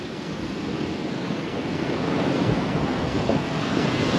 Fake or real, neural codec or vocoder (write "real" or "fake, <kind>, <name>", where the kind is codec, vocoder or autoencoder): fake, codec, SNAC